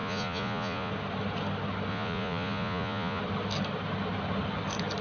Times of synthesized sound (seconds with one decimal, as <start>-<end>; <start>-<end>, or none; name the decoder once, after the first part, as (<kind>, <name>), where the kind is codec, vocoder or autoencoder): 0.0-0.9 (vocoder, Vocos); 1.9-3.2

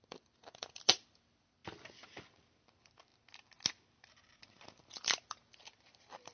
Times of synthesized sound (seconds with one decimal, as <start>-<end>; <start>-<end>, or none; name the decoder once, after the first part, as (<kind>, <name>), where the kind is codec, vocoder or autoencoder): 0.0-1.6 (vocoder, BigVGAN v2); 2.6-3.1; 4.9-6.3

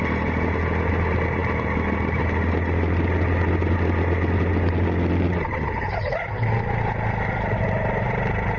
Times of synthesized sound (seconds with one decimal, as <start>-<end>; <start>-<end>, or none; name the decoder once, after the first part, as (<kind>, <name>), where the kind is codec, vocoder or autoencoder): none